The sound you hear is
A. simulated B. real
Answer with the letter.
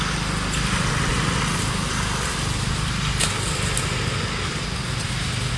B